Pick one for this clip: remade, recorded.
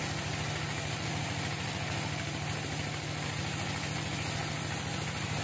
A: recorded